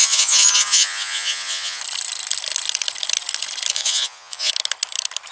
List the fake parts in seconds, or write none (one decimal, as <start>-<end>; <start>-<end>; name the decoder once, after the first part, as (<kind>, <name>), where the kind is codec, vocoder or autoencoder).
0.0-1.8 (vocoder, Vocos); 3.7-4.5